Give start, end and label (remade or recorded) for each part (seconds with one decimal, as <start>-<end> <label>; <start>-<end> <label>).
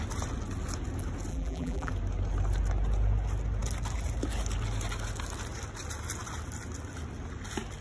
0.0-1.3 recorded; 1.3-1.9 remade; 1.9-7.8 recorded